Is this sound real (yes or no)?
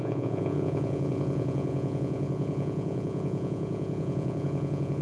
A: no